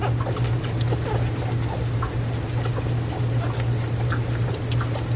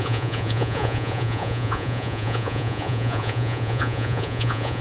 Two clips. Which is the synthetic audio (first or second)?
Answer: second